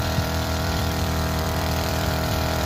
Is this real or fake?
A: fake